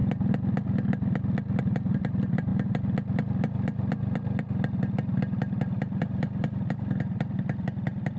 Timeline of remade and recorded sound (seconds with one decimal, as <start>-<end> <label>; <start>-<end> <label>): 0.0-1.6 recorded; 1.6-2.5 remade; 2.5-6.0 recorded; 6.0-8.2 remade